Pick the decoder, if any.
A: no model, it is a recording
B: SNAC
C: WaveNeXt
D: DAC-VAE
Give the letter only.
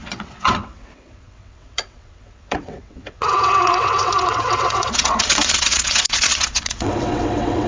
C